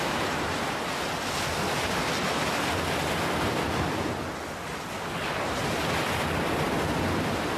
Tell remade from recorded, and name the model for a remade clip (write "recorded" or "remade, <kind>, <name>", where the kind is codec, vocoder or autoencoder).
recorded